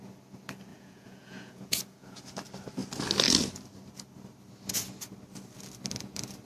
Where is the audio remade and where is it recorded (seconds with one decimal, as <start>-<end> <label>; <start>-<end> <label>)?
0.0-0.7 recorded; 0.7-2.2 remade; 2.2-6.5 recorded